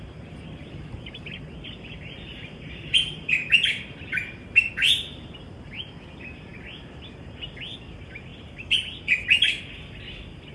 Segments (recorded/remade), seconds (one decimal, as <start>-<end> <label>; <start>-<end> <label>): 0.0-10.5 recorded